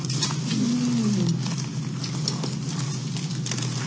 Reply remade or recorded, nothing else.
recorded